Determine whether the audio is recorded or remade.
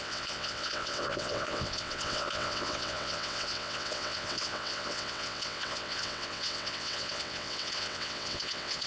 remade